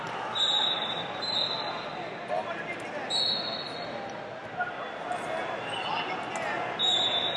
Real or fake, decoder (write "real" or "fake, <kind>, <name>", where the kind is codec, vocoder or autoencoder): real